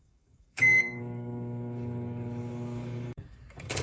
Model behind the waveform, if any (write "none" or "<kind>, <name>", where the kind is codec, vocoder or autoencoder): codec, DAC